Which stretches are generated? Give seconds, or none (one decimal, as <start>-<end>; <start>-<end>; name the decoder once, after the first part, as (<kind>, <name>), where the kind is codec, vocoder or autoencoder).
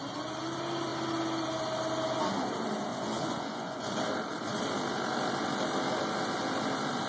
2.9-3.9 (vocoder, Vocos)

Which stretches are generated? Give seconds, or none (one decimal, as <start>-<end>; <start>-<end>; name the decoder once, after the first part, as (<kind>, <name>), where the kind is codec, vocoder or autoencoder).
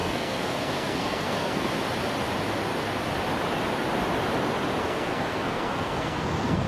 0.0-1.7 (codec, SNAC); 4.8-6.7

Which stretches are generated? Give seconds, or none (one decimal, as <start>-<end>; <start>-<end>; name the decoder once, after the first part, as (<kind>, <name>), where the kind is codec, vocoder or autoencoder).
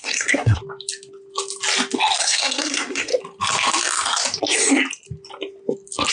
0.0-0.6 (codec, SNAC); 2.2-3.1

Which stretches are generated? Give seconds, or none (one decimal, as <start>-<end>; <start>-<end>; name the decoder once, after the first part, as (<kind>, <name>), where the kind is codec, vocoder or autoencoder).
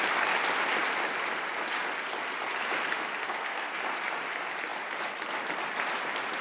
3.2-3.7 (codec, SNAC)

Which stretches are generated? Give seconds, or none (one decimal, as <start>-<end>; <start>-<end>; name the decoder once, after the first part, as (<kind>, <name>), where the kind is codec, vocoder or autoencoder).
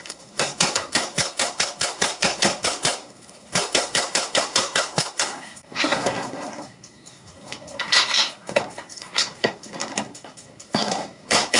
0.0-11.6 (codec, SNAC)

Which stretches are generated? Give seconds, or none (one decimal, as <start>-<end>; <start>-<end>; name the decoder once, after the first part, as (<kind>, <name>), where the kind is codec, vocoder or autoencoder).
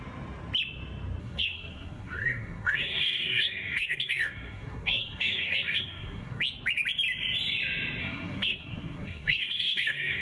1.2-6.4 (codec, SNAC); 8.0-10.2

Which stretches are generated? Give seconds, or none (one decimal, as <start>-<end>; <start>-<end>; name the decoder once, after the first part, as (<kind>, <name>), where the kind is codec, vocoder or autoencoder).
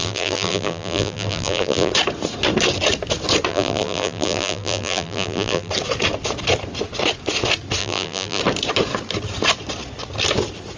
0.0-1.9 (vocoder, BigVGAN v2); 3.5-5.7; 7.8-8.4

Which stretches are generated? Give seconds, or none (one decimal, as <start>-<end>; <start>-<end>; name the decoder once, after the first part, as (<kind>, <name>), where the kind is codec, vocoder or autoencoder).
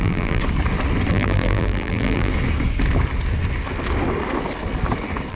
0.0-0.4 (vocoder, BigVGAN v2); 1.1-2.3